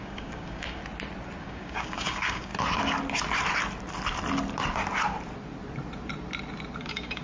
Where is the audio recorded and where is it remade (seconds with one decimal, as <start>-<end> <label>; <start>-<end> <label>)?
0.0-0.8 remade; 0.8-1.4 recorded; 1.4-2.5 remade; 2.5-6.8 recorded; 6.8-7.2 remade